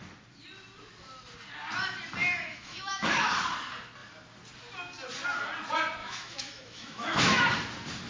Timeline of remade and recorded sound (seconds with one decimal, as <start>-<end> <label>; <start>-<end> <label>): 0.0-2.2 recorded; 2.2-3.3 remade; 3.3-6.0 recorded; 6.0-7.5 remade; 7.5-8.1 recorded